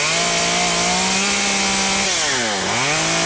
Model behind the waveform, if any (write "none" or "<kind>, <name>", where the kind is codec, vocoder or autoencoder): none